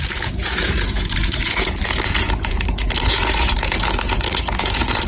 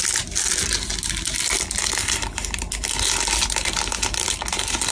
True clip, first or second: second